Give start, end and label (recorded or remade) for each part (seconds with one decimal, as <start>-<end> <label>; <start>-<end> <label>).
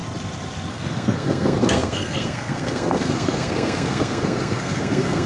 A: 0.0-0.7 recorded; 0.7-5.3 remade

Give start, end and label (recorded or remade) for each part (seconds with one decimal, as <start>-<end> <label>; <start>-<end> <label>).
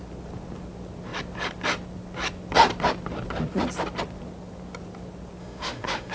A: 0.0-5.4 recorded; 5.4-6.1 remade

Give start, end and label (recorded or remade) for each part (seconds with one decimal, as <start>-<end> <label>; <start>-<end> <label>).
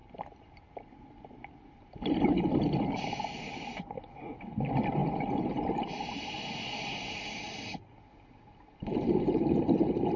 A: 0.0-10.2 recorded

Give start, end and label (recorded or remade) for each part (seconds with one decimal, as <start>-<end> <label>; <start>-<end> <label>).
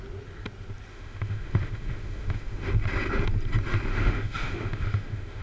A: 0.0-0.9 recorded; 0.9-2.7 remade; 2.7-3.9 recorded; 3.9-5.4 remade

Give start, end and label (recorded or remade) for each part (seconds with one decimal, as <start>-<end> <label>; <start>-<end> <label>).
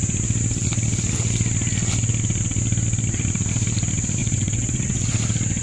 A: 0.0-4.2 recorded; 4.2-5.0 remade; 5.0-5.6 recorded